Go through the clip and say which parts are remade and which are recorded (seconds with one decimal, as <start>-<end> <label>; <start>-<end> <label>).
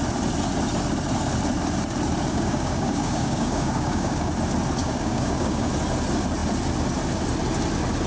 0.0-2.3 recorded; 2.3-4.3 remade; 4.3-4.8 recorded; 4.8-5.7 remade; 5.7-8.1 recorded